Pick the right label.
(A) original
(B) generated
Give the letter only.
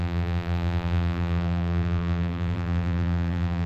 B